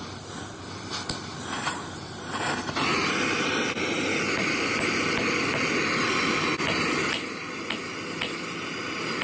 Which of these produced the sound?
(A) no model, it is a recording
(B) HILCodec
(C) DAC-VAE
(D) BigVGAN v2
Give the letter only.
A